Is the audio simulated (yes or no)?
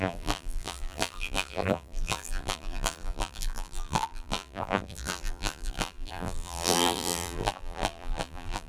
yes